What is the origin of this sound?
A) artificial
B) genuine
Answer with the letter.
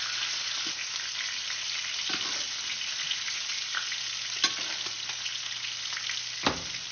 B